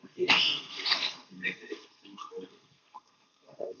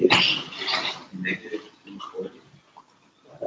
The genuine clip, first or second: second